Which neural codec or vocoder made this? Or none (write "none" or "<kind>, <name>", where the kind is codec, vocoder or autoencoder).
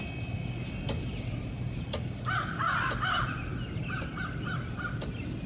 none